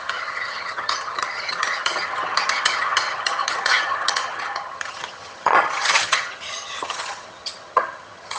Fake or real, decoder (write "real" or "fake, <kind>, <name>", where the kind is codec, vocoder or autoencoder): fake, vocoder, HiFi-GAN